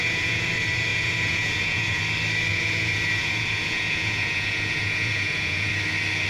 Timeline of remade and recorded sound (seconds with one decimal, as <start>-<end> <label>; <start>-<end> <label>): 0.0-0.5 remade; 0.5-0.9 recorded; 0.9-2.0 remade; 2.0-2.5 recorded; 2.5-5.7 remade; 5.7-6.3 recorded